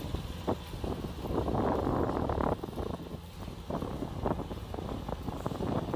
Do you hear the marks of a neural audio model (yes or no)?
no